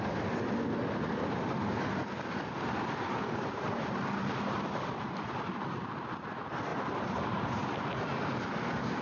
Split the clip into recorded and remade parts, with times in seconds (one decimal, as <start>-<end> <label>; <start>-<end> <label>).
0.0-6.7 recorded; 6.7-8.1 remade; 8.1-9.0 recorded